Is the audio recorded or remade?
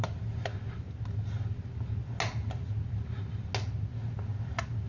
recorded